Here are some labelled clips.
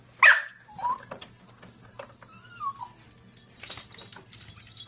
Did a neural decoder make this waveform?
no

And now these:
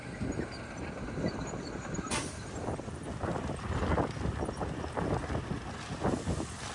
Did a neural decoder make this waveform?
no